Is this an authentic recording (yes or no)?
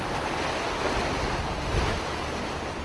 yes